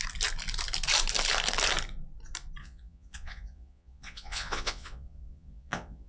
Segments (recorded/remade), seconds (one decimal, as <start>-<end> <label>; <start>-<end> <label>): 0.0-2.6 recorded; 2.6-6.1 remade